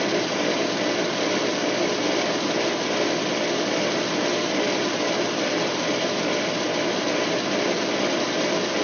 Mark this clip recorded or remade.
recorded